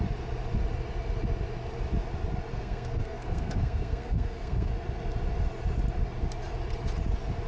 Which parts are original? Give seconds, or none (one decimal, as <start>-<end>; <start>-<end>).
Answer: 0.0-2.5; 4.7-7.5